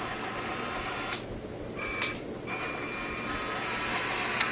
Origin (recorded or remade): recorded